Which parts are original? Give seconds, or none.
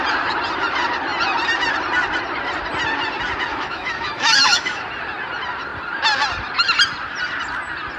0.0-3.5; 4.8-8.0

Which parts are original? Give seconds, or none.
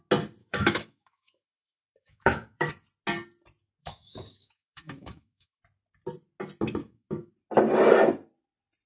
0.0-0.4; 2.7-3.8; 5.6-6.8; 7.3-8.9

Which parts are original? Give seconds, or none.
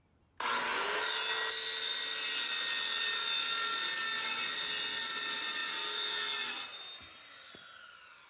0.0-8.3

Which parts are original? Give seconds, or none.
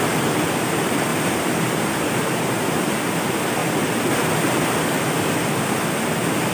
0.0-1.1; 3.0-3.6; 4.5-6.5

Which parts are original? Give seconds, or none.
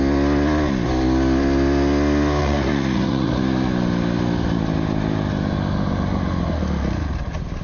0.0-2.4; 3.3-7.6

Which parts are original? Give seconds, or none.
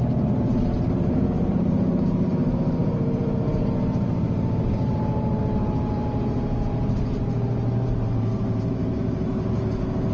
none